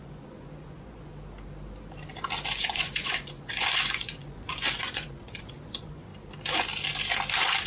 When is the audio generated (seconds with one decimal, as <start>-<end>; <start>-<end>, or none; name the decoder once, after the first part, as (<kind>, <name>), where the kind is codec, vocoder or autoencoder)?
0.0-1.1 (vocoder, Vocos); 2.5-6.1